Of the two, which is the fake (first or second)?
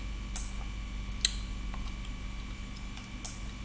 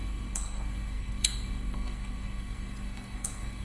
second